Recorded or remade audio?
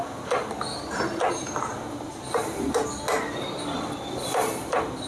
recorded